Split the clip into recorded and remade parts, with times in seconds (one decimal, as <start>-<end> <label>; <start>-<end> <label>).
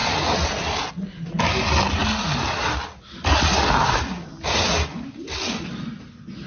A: 0.0-6.5 recorded